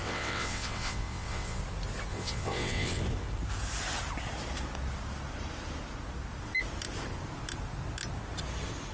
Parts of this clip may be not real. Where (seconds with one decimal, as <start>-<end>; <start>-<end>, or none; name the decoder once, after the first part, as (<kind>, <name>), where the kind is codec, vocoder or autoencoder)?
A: 0.0-1.6 (vocoder, WaveNeXt); 2.1-3.0

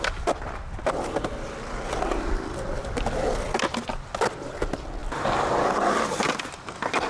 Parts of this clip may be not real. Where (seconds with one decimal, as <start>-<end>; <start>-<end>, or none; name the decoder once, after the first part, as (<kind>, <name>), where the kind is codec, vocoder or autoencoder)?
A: none

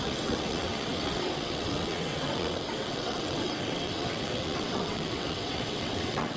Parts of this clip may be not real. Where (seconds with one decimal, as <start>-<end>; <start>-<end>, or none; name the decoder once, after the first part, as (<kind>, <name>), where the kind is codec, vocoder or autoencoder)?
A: 0.0-6.4 (vocoder, WaveNeXt)

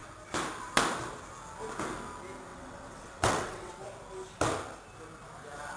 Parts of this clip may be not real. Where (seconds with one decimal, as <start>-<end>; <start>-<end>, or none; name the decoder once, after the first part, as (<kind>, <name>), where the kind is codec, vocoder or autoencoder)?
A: 2.5-3.7 (vocoder, WaveNeXt)

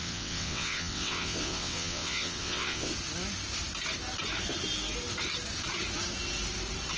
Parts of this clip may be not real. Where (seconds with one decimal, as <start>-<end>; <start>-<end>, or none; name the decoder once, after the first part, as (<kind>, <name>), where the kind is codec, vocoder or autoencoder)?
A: 0.0-2.9 (vocoder, WaveNeXt)

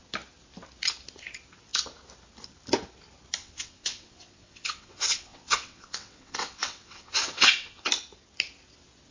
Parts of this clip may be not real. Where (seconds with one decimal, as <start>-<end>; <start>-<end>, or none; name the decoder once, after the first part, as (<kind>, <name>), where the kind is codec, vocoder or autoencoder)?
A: 3.4-7.9 (vocoder, WaveNeXt)

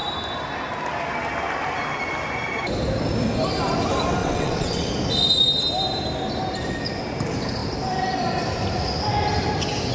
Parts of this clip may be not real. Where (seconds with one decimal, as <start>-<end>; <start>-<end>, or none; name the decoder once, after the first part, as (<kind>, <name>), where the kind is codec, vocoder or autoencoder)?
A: 4.2-4.9 (vocoder, WaveNeXt)